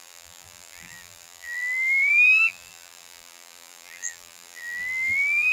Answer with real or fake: fake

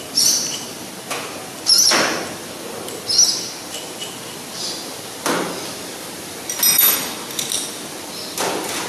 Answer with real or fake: real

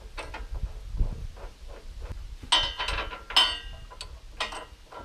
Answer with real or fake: real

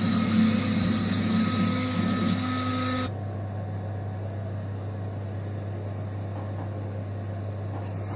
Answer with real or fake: real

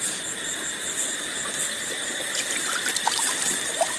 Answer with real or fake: fake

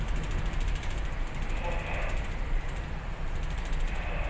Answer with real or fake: real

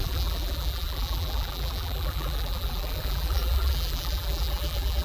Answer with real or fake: fake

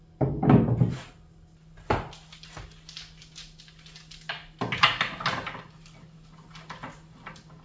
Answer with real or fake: real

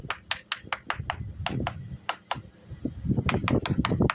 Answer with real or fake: real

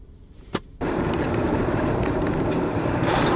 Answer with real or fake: fake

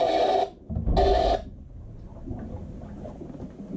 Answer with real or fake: real